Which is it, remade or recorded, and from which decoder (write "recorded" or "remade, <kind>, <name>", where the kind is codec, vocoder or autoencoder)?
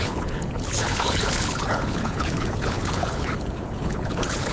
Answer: remade, codec, HILCodec